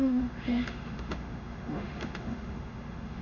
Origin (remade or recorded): remade